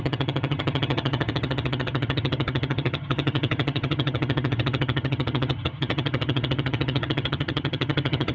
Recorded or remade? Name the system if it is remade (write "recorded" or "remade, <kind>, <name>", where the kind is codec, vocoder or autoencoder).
remade, vocoder, HiFi-GAN